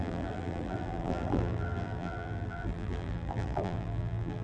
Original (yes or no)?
no